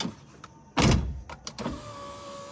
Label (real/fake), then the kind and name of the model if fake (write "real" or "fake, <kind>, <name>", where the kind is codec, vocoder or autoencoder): real